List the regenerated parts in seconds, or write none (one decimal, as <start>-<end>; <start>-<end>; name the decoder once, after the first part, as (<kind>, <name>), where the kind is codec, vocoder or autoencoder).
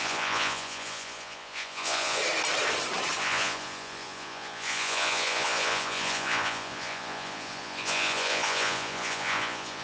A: 0.0-2.2 (vocoder, Vocos); 3.2-9.8